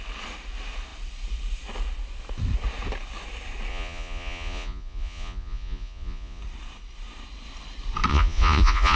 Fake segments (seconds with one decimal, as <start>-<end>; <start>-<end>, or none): 3.7-6.4; 8.1-9.0